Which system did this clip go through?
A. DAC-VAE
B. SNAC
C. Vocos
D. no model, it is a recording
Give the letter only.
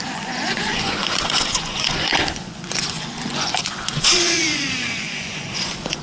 C